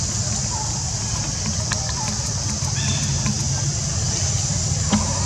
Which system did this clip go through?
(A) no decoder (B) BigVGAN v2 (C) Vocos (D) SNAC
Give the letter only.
B